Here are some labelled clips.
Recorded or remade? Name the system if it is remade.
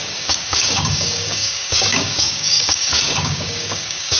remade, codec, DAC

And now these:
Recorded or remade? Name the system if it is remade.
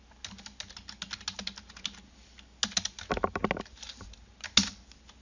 recorded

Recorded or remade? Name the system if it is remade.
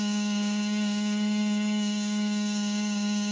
remade, codec, DAC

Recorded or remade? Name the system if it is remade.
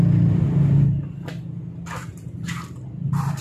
recorded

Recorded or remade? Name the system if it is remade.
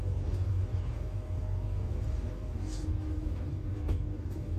remade, codec, DAC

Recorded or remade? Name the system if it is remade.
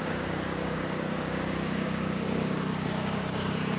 remade, codec, DAC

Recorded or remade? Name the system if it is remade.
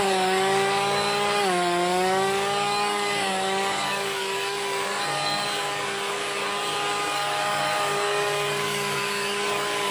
remade, codec, DAC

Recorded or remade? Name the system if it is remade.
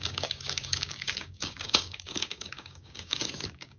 remade, codec, DAC